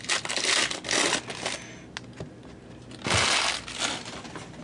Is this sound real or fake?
real